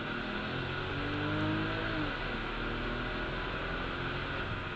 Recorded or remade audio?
recorded